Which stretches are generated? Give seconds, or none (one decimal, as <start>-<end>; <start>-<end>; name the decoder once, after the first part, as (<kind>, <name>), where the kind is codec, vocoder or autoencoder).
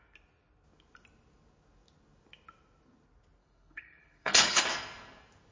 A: 3.4-4.6 (codec, HILCodec)